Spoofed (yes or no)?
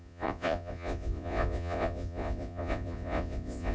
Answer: yes